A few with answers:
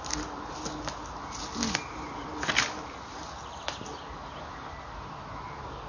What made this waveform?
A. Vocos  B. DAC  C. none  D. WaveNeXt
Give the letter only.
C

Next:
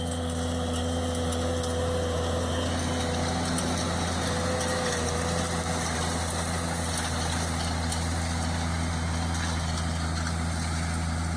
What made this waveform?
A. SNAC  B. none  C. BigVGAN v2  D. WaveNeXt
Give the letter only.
B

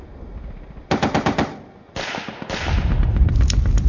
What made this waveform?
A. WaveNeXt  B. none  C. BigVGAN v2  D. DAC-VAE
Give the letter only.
B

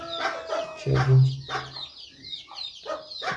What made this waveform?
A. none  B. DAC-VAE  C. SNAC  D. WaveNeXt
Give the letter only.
A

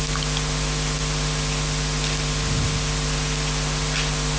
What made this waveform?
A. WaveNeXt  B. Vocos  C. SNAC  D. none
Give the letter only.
D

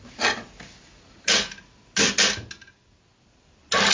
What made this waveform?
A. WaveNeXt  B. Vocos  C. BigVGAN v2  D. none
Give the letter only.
D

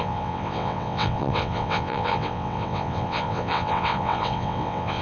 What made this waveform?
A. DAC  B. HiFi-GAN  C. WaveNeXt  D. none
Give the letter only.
C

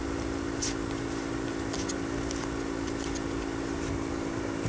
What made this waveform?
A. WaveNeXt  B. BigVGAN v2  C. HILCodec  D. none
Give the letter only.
D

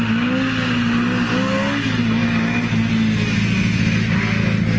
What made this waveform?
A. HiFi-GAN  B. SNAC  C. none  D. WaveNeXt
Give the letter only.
C